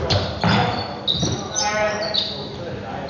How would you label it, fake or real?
real